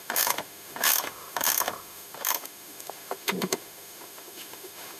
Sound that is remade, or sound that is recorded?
remade